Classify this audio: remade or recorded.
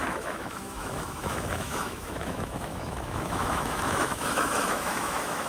remade